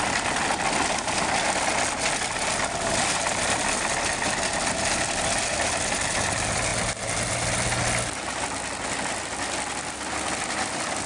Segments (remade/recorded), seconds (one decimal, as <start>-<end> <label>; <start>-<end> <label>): 0.0-11.1 recorded